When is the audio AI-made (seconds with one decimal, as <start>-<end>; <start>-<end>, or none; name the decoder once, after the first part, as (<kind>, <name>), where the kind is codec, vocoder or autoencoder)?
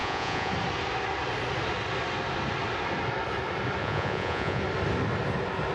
0.0-0.5 (vocoder, Vocos); 3.8-4.6